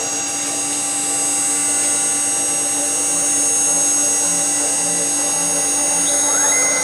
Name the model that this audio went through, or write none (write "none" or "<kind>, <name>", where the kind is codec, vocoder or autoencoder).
none